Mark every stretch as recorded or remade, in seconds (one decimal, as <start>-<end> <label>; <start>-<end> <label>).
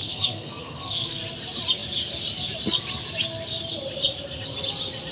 0.0-1.2 remade; 1.2-5.1 recorded